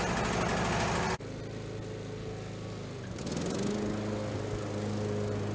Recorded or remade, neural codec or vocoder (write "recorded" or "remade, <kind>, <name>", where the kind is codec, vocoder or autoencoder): recorded